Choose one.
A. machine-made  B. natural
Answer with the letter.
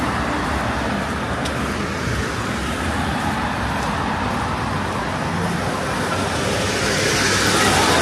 B